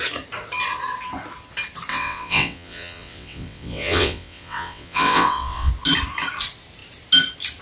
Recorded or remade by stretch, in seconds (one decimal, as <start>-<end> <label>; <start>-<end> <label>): 0.0-1.9 recorded; 1.9-5.7 remade; 5.7-7.6 recorded

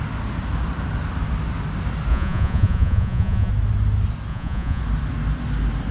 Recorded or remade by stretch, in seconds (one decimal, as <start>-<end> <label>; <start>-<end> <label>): 0.0-2.1 recorded; 2.1-3.5 remade; 3.5-4.3 recorded; 4.3-4.8 remade; 4.8-5.9 recorded

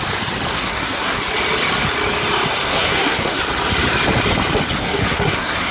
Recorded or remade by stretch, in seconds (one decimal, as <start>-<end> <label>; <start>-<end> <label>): 0.0-0.5 recorded; 0.5-1.2 remade; 1.2-2.6 recorded; 2.6-3.4 remade; 3.4-4.8 recorded; 4.8-5.7 remade

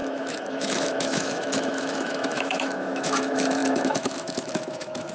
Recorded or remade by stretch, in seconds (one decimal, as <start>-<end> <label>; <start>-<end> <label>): 0.0-5.1 remade

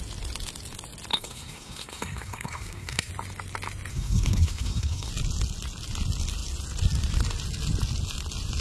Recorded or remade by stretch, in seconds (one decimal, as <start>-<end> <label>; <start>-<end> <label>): 0.0-1.1 recorded; 1.1-3.1 remade; 3.1-3.9 recorded; 3.9-5.1 remade; 5.1-8.6 recorded

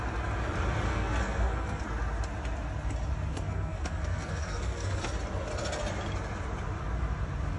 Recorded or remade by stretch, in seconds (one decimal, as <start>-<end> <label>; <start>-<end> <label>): 0.0-0.9 recorded; 0.9-1.8 remade; 1.8-3.3 recorded; 3.3-5.0 remade; 5.0-7.6 recorded